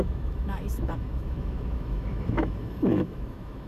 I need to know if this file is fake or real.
fake